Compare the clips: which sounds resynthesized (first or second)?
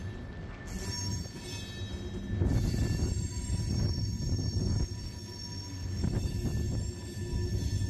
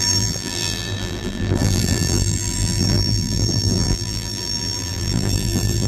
second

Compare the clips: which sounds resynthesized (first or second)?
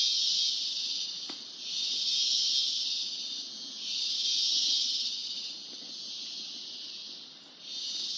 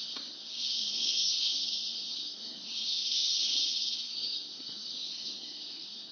second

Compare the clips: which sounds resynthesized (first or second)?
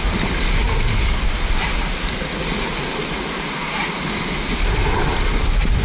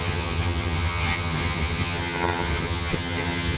second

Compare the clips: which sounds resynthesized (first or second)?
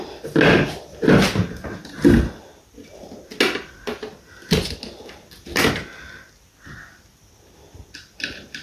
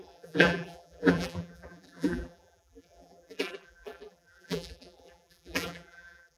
second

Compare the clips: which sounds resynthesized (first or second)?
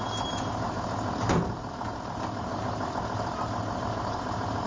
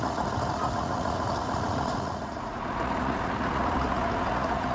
second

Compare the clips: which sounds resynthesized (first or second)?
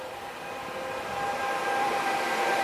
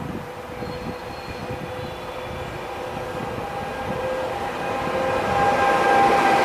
first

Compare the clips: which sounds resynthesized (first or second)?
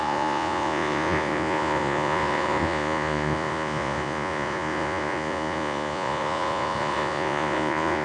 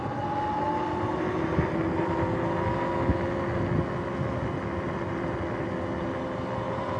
first